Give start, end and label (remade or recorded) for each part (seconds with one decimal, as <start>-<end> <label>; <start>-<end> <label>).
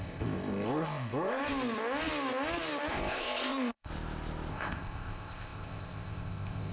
0.0-1.4 remade; 1.4-2.9 recorded; 2.9-3.9 remade; 3.9-4.5 recorded; 4.5-6.7 remade